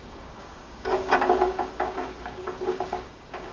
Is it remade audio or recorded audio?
remade